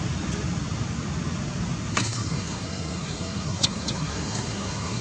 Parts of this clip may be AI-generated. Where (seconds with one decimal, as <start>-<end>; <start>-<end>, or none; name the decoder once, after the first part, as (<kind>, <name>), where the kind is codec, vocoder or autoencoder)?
1.9-5.0 (codec, SNAC)